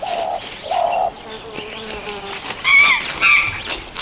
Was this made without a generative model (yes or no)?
yes